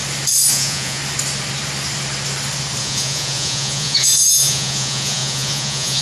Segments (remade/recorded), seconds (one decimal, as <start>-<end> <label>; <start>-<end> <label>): 0.0-0.5 recorded; 0.5-1.0 remade; 1.0-2.8 recorded; 2.8-6.0 remade